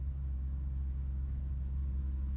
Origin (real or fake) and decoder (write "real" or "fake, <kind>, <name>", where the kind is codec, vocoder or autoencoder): real